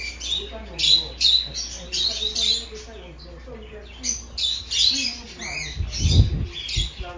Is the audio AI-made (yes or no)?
no